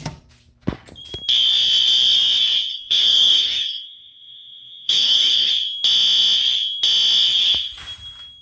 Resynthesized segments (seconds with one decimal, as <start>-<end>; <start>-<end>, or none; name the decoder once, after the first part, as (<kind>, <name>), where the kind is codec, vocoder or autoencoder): 2.7-5.5 (codec, DAC)